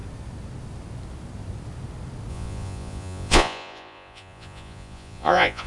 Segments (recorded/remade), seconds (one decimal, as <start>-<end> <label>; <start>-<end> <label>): 0.0-2.3 recorded; 2.3-5.7 remade